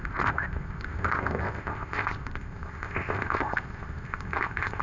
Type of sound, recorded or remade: remade